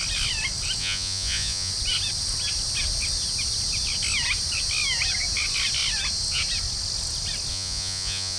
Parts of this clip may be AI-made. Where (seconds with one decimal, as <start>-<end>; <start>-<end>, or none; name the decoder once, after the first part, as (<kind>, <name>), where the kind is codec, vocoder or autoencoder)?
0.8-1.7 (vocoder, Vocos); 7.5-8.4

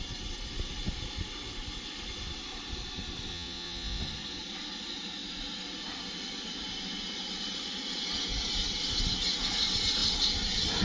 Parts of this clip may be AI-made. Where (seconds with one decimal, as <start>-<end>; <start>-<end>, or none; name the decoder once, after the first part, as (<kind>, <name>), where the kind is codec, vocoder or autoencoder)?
3.3-4.0 (vocoder, Vocos)

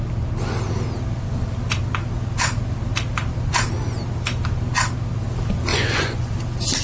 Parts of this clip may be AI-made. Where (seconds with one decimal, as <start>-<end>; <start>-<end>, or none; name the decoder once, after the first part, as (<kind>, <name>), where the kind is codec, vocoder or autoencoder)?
5.7-6.3 (vocoder, Vocos)